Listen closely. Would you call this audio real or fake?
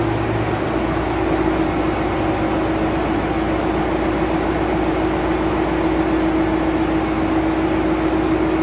real